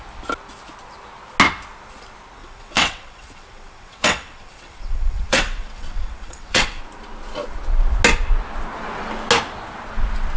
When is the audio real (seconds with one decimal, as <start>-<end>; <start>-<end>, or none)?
0.0-2.4; 6.8-10.4